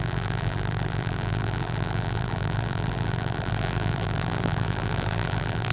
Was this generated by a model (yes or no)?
yes